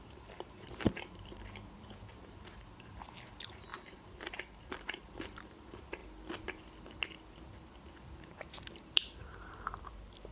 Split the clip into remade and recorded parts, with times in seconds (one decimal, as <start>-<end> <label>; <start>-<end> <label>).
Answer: 0.0-6.0 remade; 6.0-8.2 recorded; 8.2-10.3 remade